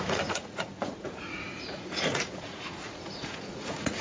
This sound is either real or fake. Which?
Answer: fake